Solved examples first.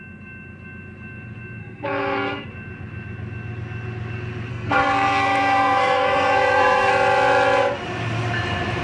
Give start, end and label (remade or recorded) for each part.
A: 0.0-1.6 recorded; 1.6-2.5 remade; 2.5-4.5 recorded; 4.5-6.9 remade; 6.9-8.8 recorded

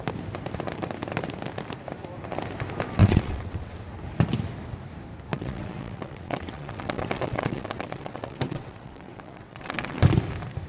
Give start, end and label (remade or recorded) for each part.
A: 0.0-3.0 recorded; 3.0-3.8 remade; 3.8-5.3 recorded; 5.3-10.0 remade; 10.0-10.7 recorded